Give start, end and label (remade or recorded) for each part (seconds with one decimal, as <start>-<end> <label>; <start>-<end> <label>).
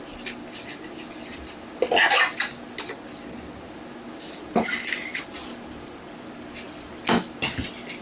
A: 0.0-4.5 recorded; 4.5-6.0 remade; 6.0-8.0 recorded